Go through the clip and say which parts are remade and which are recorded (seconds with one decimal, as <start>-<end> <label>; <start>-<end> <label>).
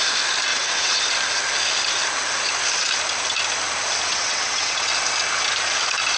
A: 0.0-0.5 recorded; 0.5-1.0 remade; 1.0-4.1 recorded; 4.1-4.9 remade; 4.9-6.2 recorded